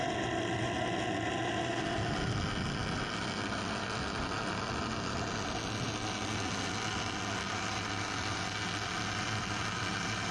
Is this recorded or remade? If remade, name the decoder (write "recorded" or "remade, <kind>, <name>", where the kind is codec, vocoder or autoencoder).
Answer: recorded